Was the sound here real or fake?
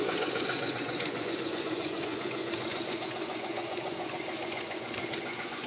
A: fake